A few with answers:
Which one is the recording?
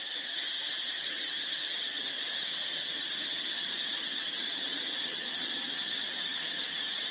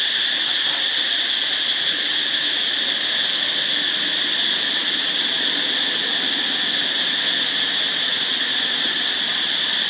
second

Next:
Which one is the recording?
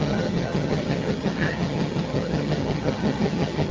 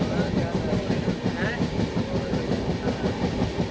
second